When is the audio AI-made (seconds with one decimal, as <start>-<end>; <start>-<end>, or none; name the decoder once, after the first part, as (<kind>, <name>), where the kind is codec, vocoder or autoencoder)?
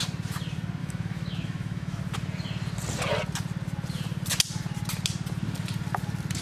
0.8-2.0 (autoencoder, DAC-VAE)